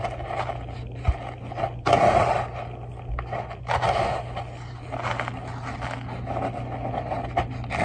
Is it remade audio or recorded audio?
recorded